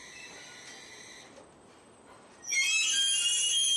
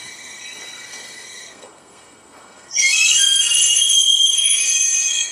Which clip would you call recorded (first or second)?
first